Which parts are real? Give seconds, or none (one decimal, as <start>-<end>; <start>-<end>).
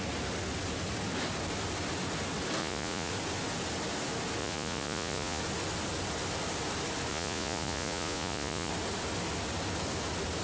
0.0-2.6; 3.1-4.4; 5.4-7.1; 8.7-10.4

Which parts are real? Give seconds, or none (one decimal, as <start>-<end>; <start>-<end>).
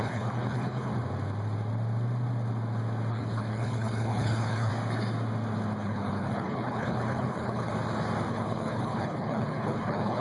0.9-3.1; 4.7-5.8; 7.7-8.3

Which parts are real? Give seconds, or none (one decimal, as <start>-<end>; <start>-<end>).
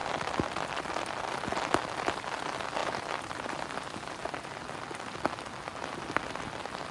0.0-6.9